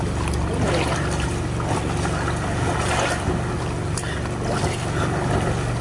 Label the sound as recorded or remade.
recorded